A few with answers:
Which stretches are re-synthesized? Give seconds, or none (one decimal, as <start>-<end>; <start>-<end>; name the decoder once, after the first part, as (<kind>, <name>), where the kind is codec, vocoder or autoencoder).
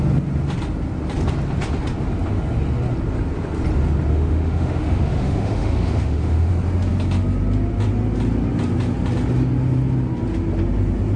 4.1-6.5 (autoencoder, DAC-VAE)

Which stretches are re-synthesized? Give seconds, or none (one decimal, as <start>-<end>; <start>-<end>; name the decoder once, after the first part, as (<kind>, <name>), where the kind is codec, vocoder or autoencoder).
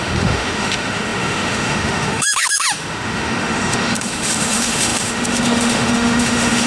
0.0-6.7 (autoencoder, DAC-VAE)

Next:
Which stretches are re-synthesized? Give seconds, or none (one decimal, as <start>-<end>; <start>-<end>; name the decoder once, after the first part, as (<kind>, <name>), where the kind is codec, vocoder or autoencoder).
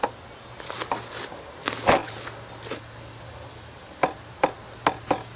none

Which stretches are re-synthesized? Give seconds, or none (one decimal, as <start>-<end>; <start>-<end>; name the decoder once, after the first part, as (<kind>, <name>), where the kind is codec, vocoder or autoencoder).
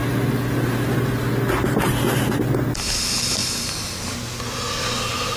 none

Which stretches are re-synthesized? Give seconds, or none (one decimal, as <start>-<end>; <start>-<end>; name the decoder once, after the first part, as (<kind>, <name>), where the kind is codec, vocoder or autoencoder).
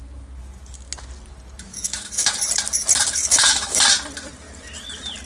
1.7-2.3 (autoencoder, DAC-VAE); 3.2-3.8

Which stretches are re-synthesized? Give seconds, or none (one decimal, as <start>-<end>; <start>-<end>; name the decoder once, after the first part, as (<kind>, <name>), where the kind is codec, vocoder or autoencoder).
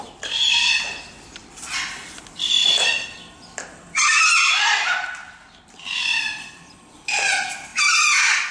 none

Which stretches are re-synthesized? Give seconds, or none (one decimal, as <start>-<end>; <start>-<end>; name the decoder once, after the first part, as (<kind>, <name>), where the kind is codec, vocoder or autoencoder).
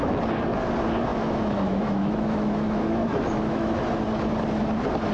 1.1-3.8 (autoencoder, DAC-VAE)